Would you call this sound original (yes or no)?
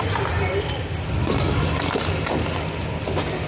yes